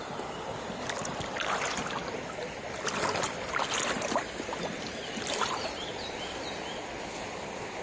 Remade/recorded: remade